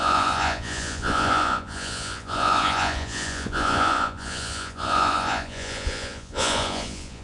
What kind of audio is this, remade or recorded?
remade